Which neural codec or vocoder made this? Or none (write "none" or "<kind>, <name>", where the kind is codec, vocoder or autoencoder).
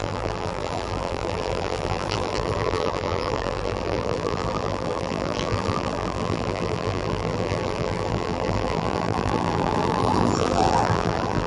vocoder, BigVGAN v2